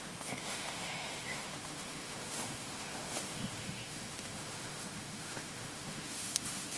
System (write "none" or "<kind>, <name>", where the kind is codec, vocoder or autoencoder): autoencoder, DAC-VAE